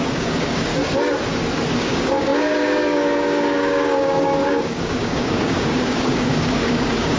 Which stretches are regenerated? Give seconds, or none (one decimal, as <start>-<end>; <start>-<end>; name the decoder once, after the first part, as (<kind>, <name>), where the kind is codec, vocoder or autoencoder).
0.0-0.7 (codec, DAC); 1.7-7.2